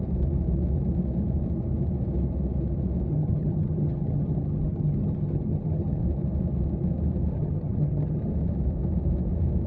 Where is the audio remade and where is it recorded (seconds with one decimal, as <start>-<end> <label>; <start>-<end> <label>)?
0.0-3.1 recorded; 3.1-6.0 remade; 6.0-7.3 recorded; 7.3-8.3 remade; 8.3-9.7 recorded